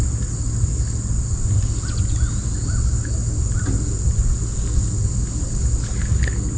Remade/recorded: recorded